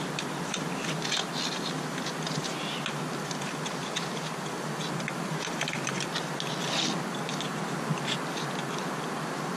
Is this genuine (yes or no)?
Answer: yes